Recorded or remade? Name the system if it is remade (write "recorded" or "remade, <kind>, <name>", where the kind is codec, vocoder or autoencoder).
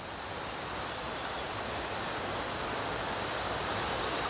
recorded